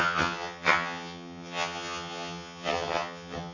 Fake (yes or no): yes